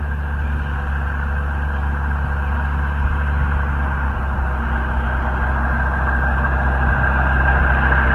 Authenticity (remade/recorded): recorded